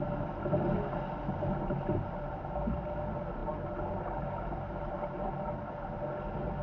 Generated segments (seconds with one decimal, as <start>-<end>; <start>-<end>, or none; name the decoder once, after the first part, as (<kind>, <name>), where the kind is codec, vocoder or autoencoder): none